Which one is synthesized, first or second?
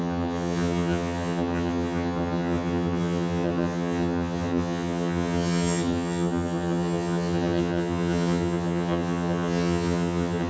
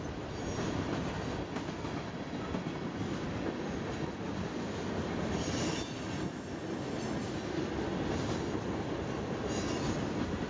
first